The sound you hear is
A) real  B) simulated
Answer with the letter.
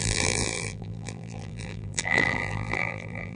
B